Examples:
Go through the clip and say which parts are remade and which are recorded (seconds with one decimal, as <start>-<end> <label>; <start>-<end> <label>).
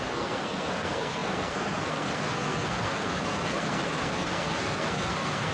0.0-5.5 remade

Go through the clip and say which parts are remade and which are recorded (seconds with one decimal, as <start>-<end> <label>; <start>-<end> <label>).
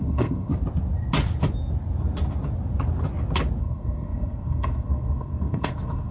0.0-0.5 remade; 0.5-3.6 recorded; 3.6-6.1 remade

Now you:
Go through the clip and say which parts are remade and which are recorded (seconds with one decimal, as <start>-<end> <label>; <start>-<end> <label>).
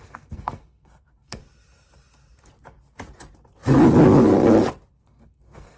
0.0-1.4 remade; 1.4-4.9 recorded; 4.9-5.8 remade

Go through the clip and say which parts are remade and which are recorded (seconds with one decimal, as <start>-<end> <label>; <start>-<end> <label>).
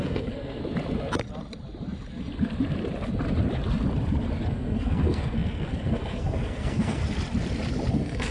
0.0-0.6 remade; 0.6-4.5 recorded; 4.5-7.0 remade; 7.0-7.9 recorded; 7.9-8.3 remade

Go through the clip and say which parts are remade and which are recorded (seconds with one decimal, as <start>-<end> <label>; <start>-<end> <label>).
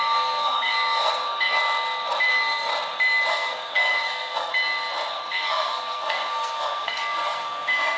0.0-1.6 remade; 1.6-2.3 recorded; 2.3-2.7 remade; 2.7-3.3 recorded; 3.3-4.5 remade; 4.5-5.1 recorded; 5.1-8.0 remade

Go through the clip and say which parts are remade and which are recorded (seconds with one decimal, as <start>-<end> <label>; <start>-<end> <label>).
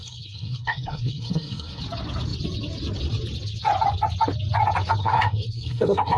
0.0-1.8 remade; 1.8-5.0 recorded; 5.0-6.2 remade